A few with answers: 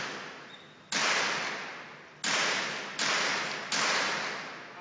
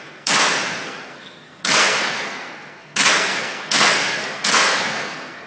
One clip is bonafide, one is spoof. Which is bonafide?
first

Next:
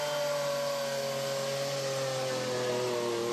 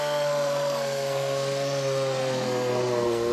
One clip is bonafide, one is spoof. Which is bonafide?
first